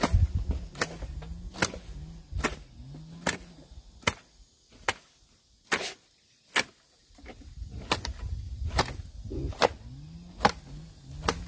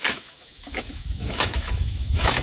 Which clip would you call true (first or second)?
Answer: first